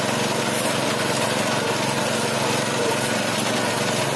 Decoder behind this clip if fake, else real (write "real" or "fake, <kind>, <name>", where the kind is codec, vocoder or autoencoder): real